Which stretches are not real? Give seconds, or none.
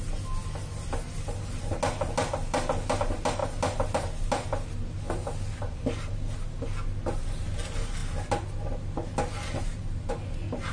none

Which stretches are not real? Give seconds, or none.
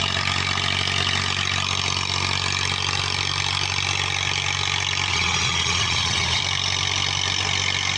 5.1-6.4 (vocoder, Vocos)